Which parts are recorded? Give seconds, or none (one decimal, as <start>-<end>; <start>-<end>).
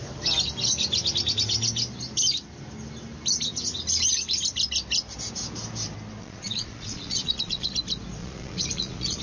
0.0-6.2; 7.7-8.2